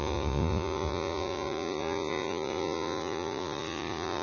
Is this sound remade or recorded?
remade